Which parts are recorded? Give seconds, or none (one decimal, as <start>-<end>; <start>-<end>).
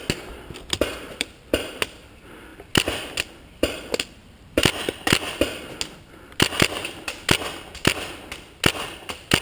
0.0-9.4